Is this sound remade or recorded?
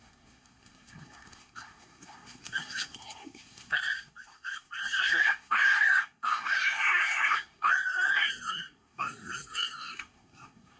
remade